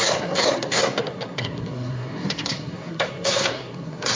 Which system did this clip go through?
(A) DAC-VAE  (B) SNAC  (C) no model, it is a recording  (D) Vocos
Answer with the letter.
B